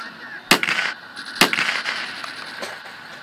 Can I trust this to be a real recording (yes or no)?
yes